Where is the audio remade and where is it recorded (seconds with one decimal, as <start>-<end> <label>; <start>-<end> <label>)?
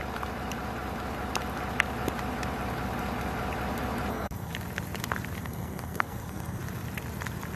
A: 0.0-4.1 recorded; 4.1-4.5 remade; 4.5-5.4 recorded; 5.4-6.6 remade; 6.6-7.6 recorded